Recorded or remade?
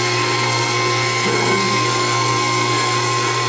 remade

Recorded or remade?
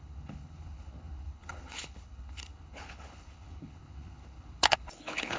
remade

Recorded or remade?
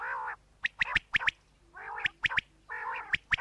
recorded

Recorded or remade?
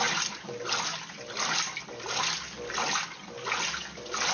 recorded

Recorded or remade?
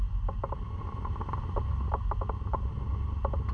recorded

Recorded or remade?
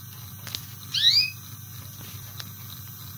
recorded